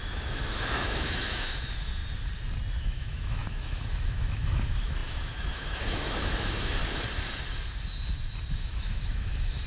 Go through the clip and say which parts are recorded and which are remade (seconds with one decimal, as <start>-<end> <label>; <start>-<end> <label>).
0.0-2.0 remade; 2.0-2.8 recorded; 2.8-6.8 remade; 6.8-8.5 recorded; 8.5-9.7 remade